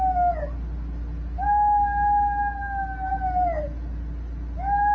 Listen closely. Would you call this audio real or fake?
real